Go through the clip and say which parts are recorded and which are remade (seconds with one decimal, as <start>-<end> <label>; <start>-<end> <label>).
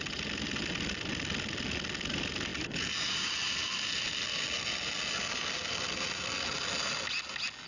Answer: 0.0-7.7 recorded